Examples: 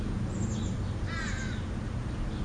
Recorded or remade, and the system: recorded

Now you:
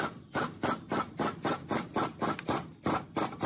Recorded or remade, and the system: recorded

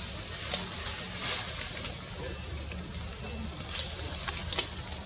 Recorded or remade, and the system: recorded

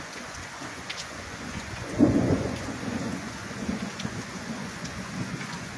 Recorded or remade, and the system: remade, vocoder, Vocos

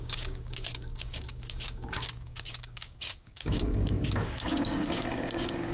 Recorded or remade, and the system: remade, codec, DAC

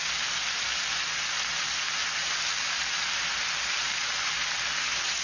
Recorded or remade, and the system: recorded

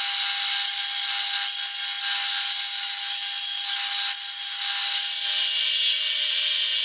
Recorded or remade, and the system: recorded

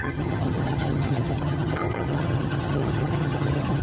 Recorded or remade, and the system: remade, vocoder, HiFi-GAN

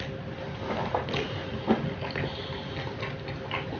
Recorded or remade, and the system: recorded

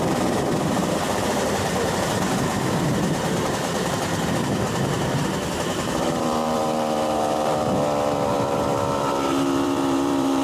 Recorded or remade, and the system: remade, vocoder, BigVGAN v2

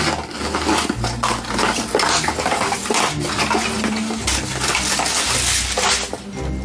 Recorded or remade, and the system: recorded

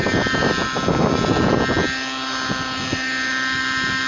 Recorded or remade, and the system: recorded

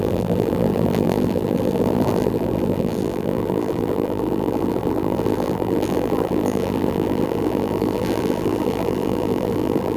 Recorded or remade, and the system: remade, vocoder, BigVGAN v2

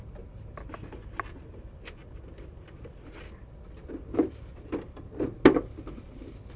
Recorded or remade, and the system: recorded